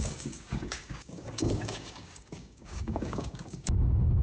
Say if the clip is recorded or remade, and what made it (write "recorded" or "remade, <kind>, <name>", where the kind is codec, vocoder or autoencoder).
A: remade, codec, DAC